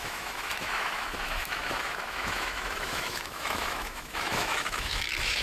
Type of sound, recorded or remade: remade